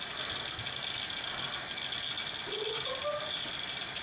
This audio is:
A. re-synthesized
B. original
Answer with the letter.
B